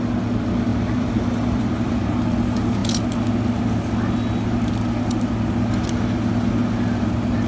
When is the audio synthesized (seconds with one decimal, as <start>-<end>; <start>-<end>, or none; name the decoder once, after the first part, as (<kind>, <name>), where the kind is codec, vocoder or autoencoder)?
0.7-2.2 (vocoder, BigVGAN v2)